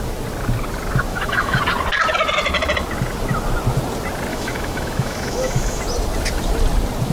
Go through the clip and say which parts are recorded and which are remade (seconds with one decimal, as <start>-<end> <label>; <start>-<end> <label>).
0.0-1.1 recorded; 1.1-1.6 remade; 1.6-4.3 recorded; 4.3-5.8 remade; 5.8-7.1 recorded